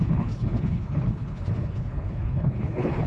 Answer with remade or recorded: remade